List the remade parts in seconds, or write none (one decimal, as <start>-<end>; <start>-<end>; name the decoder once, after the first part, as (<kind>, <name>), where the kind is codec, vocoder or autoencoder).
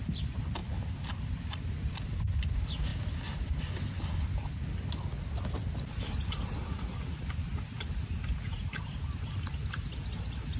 none